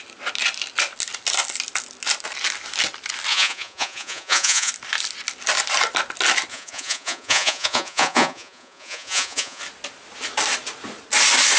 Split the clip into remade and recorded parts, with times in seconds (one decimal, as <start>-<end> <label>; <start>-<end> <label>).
0.0-3.3 recorded; 3.3-4.7 remade; 4.7-6.5 recorded; 6.5-9.6 remade; 9.6-11.6 recorded